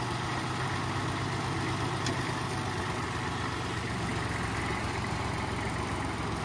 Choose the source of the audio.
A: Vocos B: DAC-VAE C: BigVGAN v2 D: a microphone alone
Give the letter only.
D